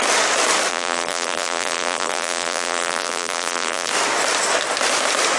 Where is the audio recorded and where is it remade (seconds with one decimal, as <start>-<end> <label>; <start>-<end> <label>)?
0.0-0.7 recorded; 0.7-3.9 remade; 3.9-5.4 recorded